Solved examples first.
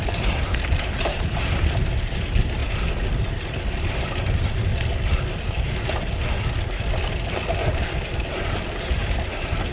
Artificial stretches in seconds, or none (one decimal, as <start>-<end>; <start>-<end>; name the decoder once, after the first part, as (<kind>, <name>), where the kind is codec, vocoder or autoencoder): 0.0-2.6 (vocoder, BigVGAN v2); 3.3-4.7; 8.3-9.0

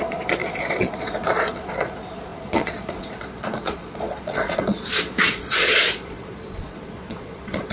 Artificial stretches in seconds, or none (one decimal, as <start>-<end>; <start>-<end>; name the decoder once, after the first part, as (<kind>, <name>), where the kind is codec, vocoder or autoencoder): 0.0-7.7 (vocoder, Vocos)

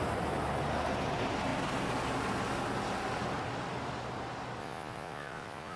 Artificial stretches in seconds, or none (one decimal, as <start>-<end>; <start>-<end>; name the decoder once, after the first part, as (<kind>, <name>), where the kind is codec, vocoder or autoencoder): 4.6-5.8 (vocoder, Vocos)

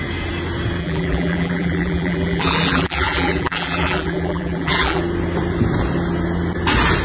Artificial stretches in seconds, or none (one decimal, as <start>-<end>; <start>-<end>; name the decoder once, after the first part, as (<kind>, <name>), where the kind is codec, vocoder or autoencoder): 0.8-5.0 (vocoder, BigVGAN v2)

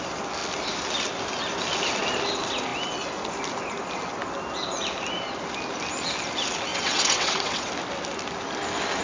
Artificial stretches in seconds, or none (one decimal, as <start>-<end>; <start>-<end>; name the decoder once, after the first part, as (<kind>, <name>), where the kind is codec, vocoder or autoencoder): 6.7-7.7 (vocoder, WaveNeXt)

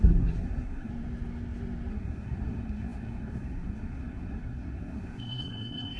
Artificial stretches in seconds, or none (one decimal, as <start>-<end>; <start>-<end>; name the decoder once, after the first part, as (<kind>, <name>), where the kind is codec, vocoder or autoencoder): 0.0-0.9 (codec, SNAC); 1.9-6.0

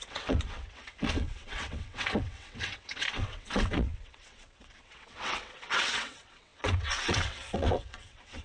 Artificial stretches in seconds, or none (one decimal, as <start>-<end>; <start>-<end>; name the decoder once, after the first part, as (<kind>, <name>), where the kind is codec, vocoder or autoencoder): 0.0-8.4 (vocoder, WaveNeXt)

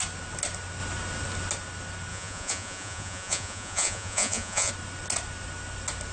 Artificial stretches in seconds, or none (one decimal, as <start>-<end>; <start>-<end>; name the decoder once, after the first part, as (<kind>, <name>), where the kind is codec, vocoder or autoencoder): 2.1-4.7 (vocoder, Vocos)